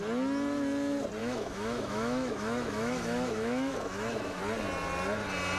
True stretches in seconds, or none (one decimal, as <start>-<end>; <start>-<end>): 0.0-1.2; 4.4-5.6